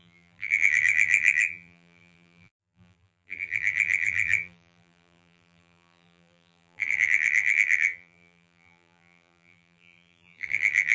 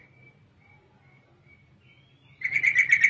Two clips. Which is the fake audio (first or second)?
first